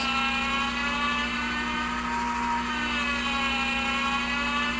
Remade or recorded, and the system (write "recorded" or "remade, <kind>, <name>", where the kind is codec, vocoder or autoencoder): recorded